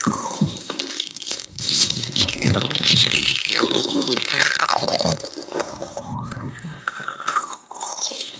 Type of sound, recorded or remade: remade